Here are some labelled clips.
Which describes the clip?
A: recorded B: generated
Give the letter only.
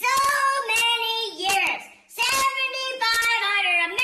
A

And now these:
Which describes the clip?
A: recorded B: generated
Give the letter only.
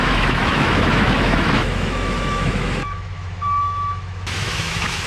B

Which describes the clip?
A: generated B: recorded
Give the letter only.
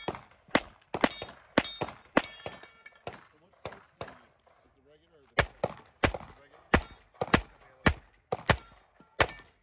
B